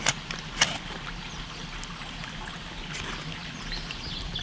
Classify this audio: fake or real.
real